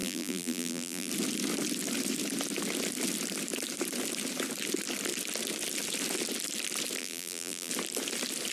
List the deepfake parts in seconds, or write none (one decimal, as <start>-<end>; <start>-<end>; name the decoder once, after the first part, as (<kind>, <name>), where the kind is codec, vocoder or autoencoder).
0.0-1.1 (vocoder, BigVGAN v2); 7.0-7.7